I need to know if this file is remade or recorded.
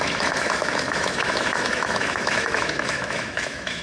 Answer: remade